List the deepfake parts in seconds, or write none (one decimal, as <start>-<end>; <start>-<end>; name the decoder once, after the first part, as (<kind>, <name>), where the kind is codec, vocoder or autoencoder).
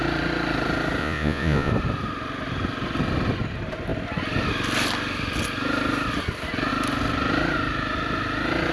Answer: 1.0-1.7 (vocoder, Vocos)